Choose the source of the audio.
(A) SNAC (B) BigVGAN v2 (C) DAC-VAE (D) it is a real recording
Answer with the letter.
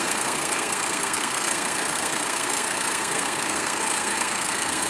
A